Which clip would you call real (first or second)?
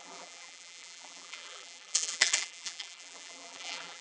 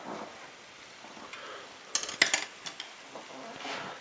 second